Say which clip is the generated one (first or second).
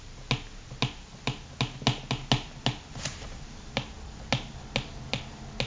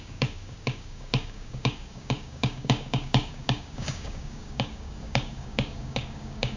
second